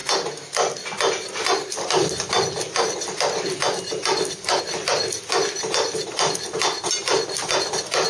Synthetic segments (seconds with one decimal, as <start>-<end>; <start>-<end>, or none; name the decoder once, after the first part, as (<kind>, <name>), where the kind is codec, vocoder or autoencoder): none